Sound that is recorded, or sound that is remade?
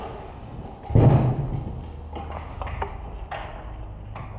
recorded